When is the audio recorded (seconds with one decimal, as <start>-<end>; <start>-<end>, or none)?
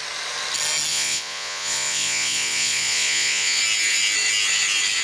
0.0-0.9; 3.6-5.0